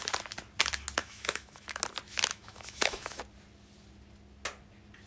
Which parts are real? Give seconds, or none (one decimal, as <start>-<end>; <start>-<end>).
0.0-1.0; 1.8-2.3; 3.2-5.1